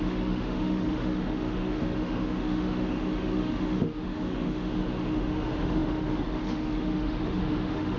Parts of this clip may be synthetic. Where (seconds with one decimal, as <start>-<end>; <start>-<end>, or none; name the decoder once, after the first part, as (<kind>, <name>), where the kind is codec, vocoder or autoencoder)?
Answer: 0.0-8.0 (autoencoder, DAC-VAE)